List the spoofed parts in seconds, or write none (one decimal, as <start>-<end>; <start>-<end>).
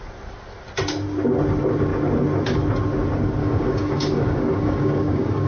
3.4-5.5